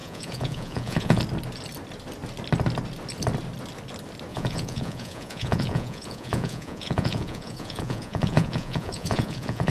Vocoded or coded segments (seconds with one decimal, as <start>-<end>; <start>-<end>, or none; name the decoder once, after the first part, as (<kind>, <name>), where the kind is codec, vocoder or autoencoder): 0.0-1.2 (vocoder, Vocos); 4.3-9.7